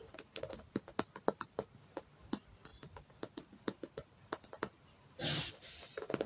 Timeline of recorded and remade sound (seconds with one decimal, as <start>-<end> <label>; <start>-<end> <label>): 0.0-6.3 recorded

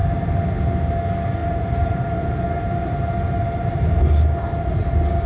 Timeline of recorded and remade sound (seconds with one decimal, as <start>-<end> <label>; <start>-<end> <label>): 0.0-1.4 recorded; 1.4-4.0 remade; 4.0-5.3 recorded

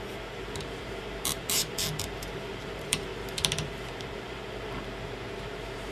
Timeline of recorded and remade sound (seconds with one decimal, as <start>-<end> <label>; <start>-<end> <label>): 0.0-3.1 remade; 3.1-3.9 recorded; 3.9-5.9 remade

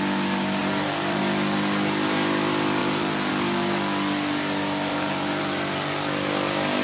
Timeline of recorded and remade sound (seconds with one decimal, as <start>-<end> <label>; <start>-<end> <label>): 0.0-0.6 recorded; 0.6-1.2 remade; 1.2-2.8 recorded; 2.8-3.3 remade; 3.3-4.9 recorded; 4.9-5.6 remade; 5.6-6.8 recorded

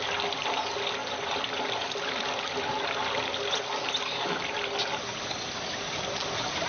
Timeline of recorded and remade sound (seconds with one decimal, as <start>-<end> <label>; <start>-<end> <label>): 0.0-6.7 recorded

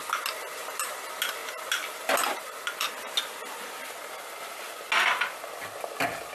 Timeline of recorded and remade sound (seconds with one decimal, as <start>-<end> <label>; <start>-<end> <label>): 0.0-6.3 recorded